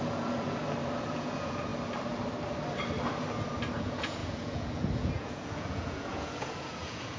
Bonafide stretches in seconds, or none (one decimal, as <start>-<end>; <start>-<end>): 0.6-1.1; 1.7-3.8